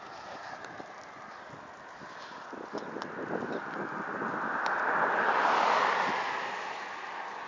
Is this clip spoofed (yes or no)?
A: no